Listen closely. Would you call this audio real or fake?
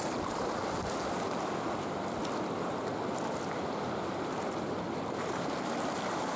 real